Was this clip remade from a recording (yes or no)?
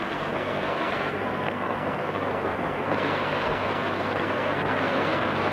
yes